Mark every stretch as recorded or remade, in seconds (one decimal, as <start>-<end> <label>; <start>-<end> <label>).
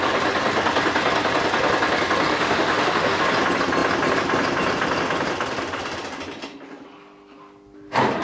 0.0-2.3 recorded; 2.3-3.2 remade; 3.2-8.2 recorded